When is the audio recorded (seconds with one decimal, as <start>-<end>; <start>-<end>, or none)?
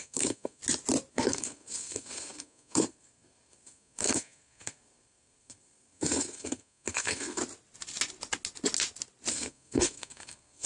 0.6-1.1; 7.4-9.3